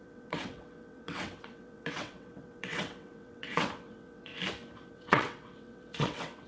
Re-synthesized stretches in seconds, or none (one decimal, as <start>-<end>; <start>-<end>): 0.0-4.3; 4.9-6.5